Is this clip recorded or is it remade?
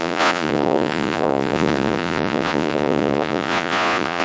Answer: remade